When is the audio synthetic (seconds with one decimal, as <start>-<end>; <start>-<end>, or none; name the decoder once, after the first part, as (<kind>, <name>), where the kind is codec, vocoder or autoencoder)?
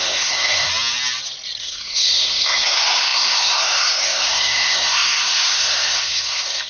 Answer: 0.0-0.7 (codec, SNAC); 1.6-6.7